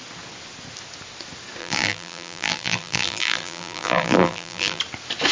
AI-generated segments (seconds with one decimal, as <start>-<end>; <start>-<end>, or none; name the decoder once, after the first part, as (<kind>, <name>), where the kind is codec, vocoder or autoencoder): 1.6-4.8 (vocoder, BigVGAN v2)